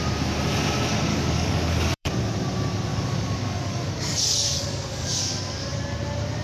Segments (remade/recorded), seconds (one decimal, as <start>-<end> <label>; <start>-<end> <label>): 0.0-1.1 recorded; 1.1-2.1 remade; 2.1-2.9 recorded; 2.9-5.2 remade; 5.2-6.4 recorded